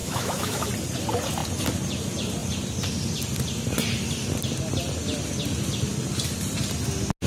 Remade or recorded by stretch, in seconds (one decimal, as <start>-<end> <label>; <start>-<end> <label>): 0.0-0.7 remade; 0.7-7.3 recorded